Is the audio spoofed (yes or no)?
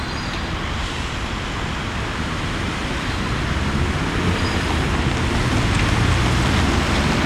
no